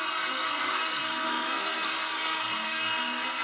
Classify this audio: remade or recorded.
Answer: remade